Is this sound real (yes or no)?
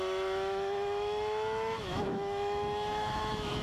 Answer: no